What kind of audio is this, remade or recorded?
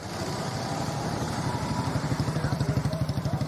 remade